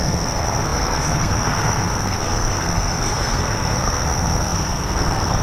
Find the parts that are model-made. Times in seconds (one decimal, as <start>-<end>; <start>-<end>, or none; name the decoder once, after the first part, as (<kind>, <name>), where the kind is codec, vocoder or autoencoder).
0.0-5.4 (codec, SNAC)